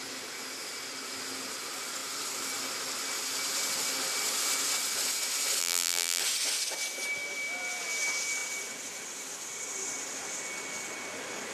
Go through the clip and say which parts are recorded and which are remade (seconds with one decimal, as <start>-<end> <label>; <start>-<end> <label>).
0.0-5.6 recorded; 5.6-6.2 remade; 6.2-11.5 recorded